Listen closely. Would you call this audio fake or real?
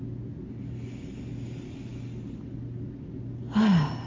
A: real